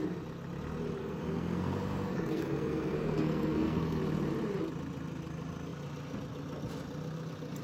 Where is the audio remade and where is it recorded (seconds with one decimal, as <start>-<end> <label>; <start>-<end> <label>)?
0.0-1.0 recorded; 1.0-4.0 remade; 4.0-7.6 recorded